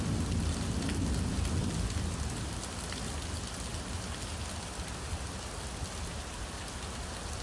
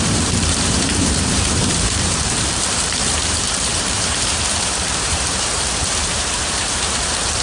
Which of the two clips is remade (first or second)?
second